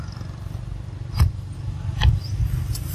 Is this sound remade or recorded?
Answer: recorded